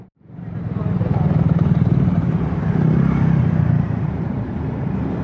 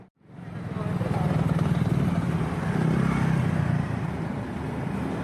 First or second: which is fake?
first